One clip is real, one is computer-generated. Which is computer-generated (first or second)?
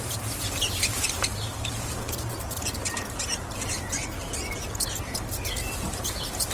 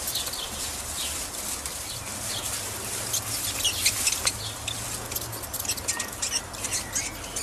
first